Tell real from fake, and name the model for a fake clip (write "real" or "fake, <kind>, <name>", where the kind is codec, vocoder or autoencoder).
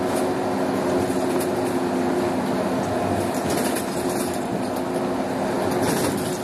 real